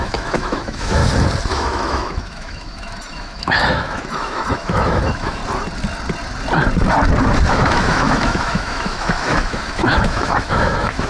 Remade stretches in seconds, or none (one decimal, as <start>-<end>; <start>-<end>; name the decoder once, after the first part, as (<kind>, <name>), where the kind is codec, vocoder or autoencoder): 0.0-1.0 (autoencoder, DAC-VAE); 1.5-5.4; 7.5-11.1